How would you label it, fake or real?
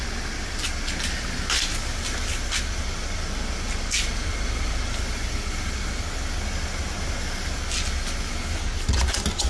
real